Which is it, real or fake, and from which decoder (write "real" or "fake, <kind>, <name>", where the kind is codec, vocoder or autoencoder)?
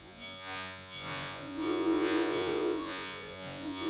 fake, vocoder, Vocos